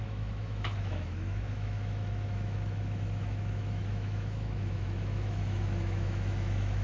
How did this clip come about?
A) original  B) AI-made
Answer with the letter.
B